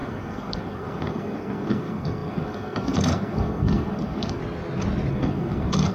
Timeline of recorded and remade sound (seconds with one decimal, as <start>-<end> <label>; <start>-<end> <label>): 0.0-4.4 remade; 4.4-5.1 recorded; 5.1-5.9 remade